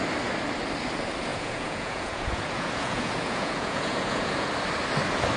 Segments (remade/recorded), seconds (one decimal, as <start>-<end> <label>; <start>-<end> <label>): 0.0-1.3 recorded; 1.3-4.5 remade; 4.5-5.4 recorded